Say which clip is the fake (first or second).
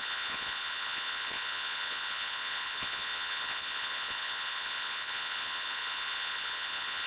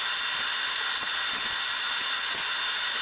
first